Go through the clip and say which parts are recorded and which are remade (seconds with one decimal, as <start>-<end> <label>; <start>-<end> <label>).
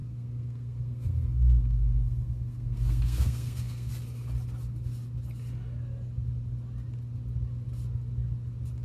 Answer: 0.0-3.9 remade; 3.9-8.8 recorded